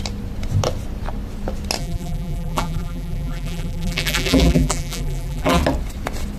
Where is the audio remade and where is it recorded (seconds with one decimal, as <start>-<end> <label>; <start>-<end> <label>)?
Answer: 0.0-1.8 recorded; 1.8-5.6 remade; 5.6-6.4 recorded